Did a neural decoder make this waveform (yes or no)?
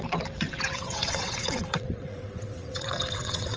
yes